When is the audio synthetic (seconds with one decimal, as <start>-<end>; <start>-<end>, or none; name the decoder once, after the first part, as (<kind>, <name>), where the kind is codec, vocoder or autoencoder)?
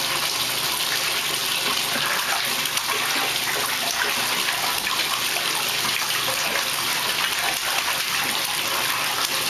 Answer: none